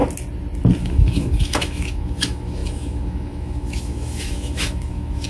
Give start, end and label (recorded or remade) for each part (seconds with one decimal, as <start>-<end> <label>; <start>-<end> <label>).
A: 0.0-0.8 recorded; 0.8-5.3 remade